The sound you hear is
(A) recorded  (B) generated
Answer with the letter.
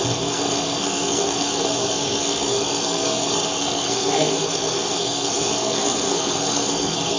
B